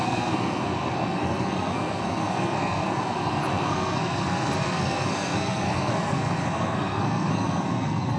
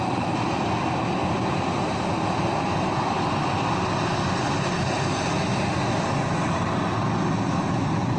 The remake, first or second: first